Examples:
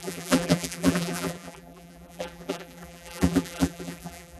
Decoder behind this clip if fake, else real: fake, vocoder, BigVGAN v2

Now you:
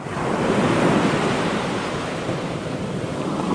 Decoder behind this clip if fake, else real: fake, vocoder, BigVGAN v2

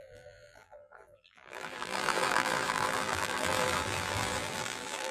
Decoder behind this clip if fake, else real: fake, vocoder, BigVGAN v2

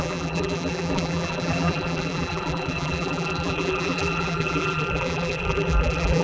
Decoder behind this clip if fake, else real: fake, vocoder, BigVGAN v2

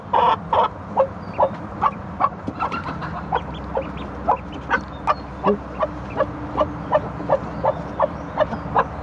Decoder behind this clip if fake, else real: real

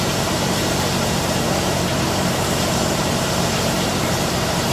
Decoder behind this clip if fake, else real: fake, vocoder, BigVGAN v2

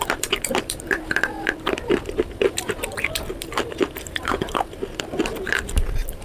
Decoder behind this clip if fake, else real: fake, vocoder, BigVGAN v2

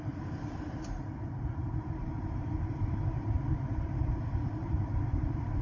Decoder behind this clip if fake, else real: fake, vocoder, BigVGAN v2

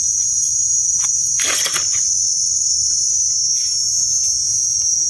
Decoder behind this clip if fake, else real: real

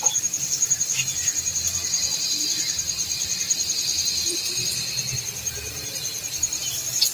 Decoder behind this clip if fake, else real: fake, vocoder, BigVGAN v2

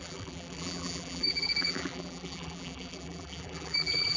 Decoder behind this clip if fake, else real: fake, vocoder, BigVGAN v2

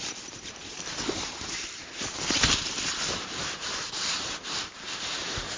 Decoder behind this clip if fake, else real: fake, vocoder, BigVGAN v2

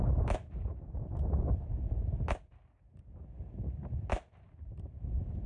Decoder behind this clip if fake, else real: real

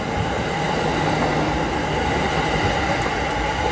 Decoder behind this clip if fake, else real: real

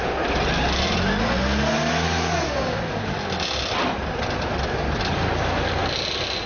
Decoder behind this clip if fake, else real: real